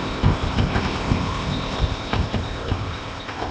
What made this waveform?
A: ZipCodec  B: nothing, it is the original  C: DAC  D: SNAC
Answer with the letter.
A